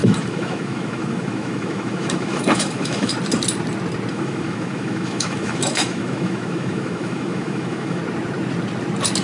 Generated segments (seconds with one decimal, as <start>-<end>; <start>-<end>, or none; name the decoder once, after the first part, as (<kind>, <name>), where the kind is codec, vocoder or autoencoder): 0.0-3.1 (autoencoder, DAC-VAE); 4.1-8.0